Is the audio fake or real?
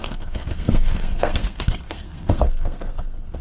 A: fake